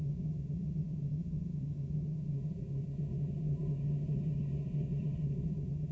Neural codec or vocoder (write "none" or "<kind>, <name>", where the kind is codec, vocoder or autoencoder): vocoder, HiFi-GAN